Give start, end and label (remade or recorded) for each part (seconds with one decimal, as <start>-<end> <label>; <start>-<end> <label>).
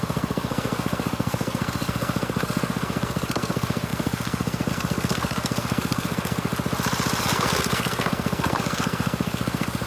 0.0-6.5 remade; 6.5-7.2 recorded; 7.2-9.9 remade